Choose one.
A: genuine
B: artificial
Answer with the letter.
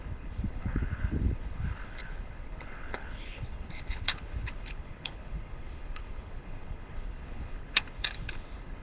B